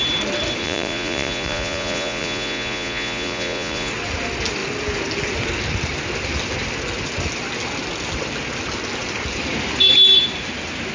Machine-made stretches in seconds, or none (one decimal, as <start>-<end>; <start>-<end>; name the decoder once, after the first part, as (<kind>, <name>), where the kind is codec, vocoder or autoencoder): 0.6-3.9 (vocoder, Vocos)